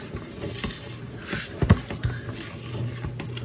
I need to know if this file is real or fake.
real